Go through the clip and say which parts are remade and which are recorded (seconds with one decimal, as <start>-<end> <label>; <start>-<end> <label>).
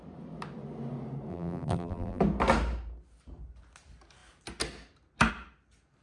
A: 0.0-1.3 recorded; 1.3-2.2 remade; 2.2-6.0 recorded